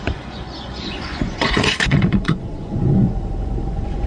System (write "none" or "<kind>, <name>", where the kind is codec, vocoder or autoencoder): vocoder, Vocos